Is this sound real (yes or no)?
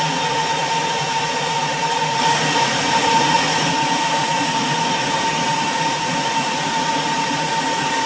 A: no